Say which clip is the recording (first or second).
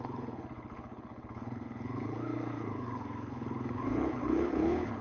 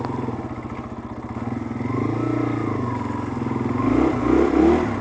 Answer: second